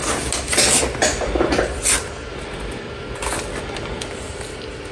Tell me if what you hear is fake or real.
real